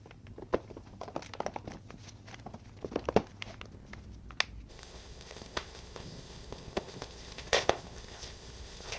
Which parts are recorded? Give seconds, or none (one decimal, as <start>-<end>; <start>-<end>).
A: 0.0-4.7